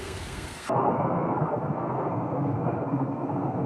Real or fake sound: fake